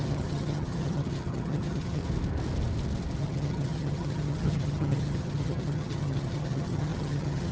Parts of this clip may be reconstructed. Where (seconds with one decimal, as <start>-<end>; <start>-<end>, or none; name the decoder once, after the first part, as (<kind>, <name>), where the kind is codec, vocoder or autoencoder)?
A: 0.0-2.0 (vocoder, HiFi-GAN); 3.2-7.5